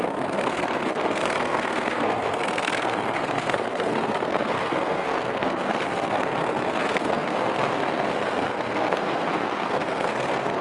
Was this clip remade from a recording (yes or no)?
yes